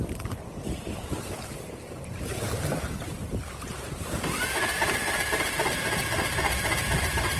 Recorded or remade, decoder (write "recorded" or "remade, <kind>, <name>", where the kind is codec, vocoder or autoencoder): remade, vocoder, BigVGAN v2